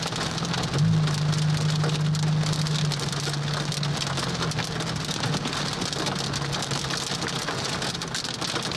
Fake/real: real